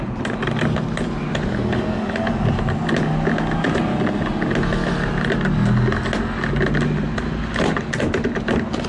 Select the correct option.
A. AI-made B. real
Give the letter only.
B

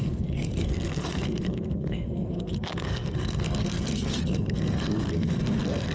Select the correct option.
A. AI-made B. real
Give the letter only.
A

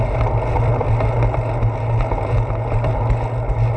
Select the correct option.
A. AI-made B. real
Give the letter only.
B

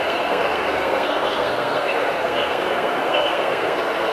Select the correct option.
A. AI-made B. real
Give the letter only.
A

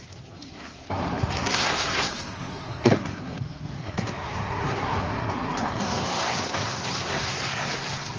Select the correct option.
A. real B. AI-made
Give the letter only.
B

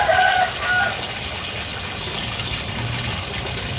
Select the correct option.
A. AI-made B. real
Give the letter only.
B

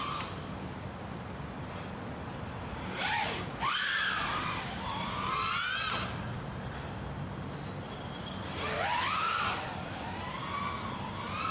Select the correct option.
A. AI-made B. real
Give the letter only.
B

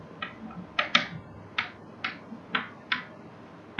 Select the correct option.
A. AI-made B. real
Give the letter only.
B